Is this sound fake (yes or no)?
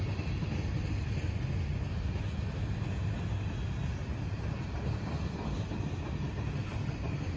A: no